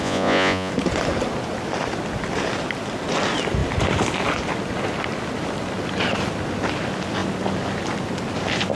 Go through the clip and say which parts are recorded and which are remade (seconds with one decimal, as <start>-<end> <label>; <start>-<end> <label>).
0.0-0.7 remade; 0.7-8.7 recorded